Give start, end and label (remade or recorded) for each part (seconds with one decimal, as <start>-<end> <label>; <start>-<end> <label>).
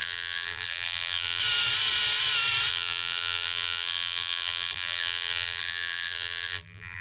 0.0-1.4 remade; 1.4-2.7 recorded; 2.7-7.0 remade